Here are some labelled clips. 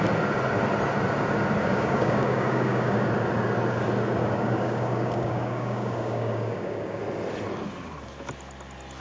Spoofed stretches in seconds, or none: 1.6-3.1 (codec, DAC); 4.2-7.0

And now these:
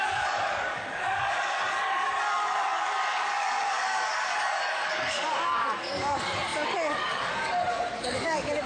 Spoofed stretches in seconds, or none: 0.0-8.7 (codec, DAC)

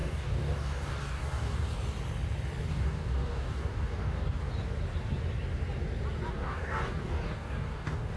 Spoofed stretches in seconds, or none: 0.0-1.7 (codec, DAC); 2.7-4.4; 6.3-8.2

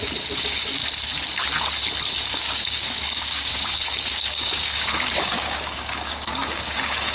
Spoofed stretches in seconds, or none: 0.0-0.8 (codec, DAC); 2.3-7.1

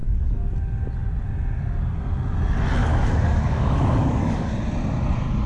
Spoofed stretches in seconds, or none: 0.0-0.5 (codec, DAC); 2.8-4.5

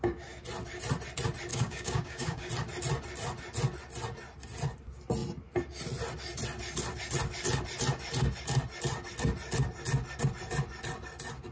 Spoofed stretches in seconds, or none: 1.5-2.5 (codec, DAC)